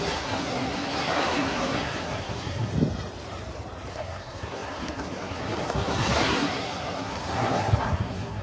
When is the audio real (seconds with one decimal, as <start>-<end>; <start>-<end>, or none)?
2.7-3.9